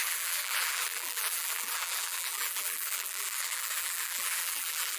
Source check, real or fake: fake